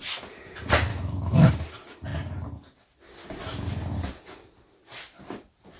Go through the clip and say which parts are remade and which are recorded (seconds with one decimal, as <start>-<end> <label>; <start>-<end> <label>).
0.0-0.9 recorded; 0.9-1.5 remade; 1.5-5.8 recorded